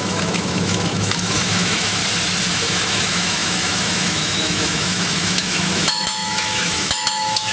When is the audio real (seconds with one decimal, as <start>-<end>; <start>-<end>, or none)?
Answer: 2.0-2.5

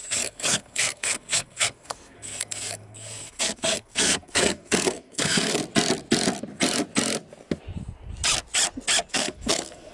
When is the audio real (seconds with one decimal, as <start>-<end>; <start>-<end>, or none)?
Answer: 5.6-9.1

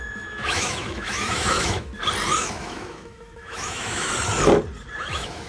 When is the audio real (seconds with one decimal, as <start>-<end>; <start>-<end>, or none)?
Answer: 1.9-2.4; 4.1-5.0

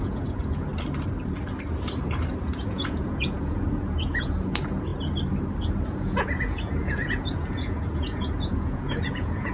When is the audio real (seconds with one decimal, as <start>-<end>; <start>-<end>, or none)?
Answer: 0.7-2.4; 4.9-5.6

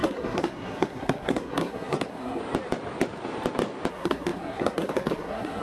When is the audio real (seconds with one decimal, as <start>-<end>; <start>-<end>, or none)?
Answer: 2.4-3.9

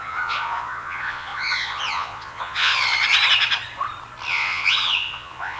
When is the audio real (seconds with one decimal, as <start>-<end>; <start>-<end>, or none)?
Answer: 2.7-4.3

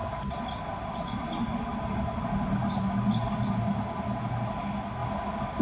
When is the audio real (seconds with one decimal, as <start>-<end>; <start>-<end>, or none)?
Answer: 0.0-5.6

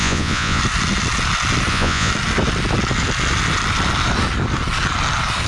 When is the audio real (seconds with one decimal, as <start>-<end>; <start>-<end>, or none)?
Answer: 0.6-1.7; 2.1-5.5